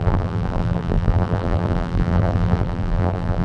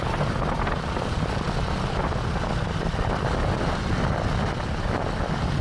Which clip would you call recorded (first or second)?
second